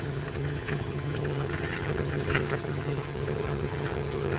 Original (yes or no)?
no